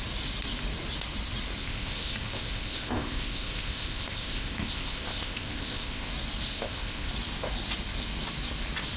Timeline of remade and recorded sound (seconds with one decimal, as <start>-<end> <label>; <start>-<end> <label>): 0.0-1.6 recorded; 1.6-6.1 remade; 6.1-6.5 recorded; 6.5-7.1 remade; 7.1-9.0 recorded